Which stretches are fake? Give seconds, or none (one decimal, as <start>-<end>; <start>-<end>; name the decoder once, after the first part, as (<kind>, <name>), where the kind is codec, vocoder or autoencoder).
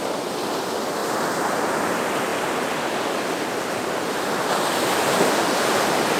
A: 0.0-1.0 (vocoder, BigVGAN v2); 1.9-2.3; 4.7-6.2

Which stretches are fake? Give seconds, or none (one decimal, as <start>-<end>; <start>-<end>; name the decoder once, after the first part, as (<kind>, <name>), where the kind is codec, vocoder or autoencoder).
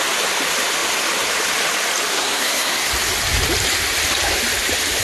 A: 2.1-2.9 (codec, SNAC)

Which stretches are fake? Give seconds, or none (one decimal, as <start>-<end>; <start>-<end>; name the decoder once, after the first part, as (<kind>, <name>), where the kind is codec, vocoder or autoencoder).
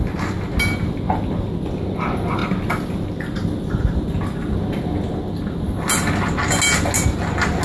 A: none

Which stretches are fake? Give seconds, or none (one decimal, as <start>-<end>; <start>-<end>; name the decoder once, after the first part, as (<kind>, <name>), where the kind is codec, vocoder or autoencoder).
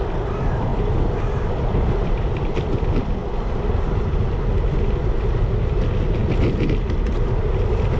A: none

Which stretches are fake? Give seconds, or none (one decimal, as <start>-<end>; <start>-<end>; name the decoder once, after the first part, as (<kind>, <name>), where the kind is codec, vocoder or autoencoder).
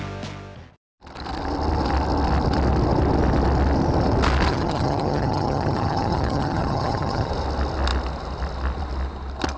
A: 4.5-7.3 (vocoder, HiFi-GAN)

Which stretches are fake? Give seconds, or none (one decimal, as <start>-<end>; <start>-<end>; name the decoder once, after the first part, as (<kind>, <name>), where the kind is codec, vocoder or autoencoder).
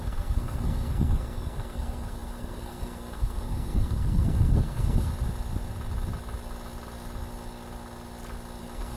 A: 0.0-5.1 (codec, SNAC); 8.6-9.0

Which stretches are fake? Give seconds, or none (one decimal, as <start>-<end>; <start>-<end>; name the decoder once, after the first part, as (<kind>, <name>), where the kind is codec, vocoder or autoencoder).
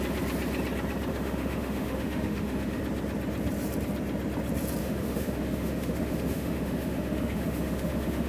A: 1.1-2.8 (autoencoder, DAC-VAE); 4.8-8.3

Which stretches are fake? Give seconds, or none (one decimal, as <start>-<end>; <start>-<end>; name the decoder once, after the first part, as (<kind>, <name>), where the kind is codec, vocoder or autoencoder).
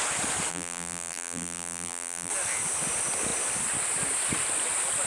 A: 0.5-2.3 (vocoder, BigVGAN v2)